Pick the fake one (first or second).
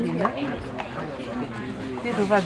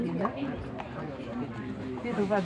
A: second